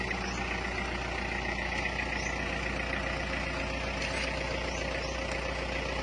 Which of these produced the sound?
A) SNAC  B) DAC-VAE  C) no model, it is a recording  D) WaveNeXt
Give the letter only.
C